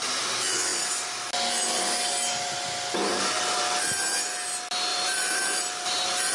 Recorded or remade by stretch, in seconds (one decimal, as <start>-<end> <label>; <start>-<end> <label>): 0.0-4.9 recorded; 4.9-6.3 remade